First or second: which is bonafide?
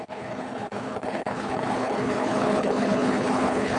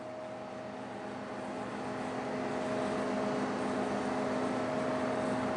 second